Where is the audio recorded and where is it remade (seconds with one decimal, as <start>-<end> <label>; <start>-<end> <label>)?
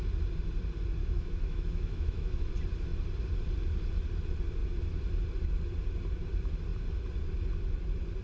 0.0-1.0 recorded; 1.0-2.5 remade; 2.5-8.2 recorded